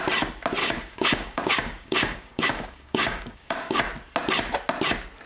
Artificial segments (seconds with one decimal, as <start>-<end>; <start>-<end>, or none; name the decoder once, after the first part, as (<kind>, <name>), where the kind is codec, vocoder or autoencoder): 0.6-3.8 (codec, DAC)